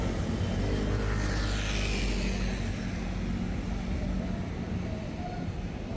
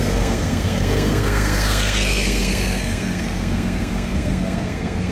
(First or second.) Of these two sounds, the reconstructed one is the second